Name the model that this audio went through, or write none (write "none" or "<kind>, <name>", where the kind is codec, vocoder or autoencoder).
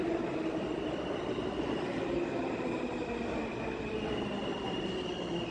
none